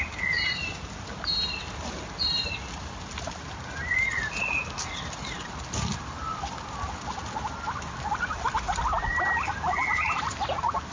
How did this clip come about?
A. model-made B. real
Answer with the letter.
B